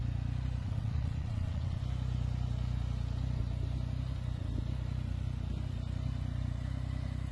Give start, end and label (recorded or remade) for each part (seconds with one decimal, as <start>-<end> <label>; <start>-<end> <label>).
0.0-0.6 recorded; 0.6-1.8 remade; 1.8-7.3 recorded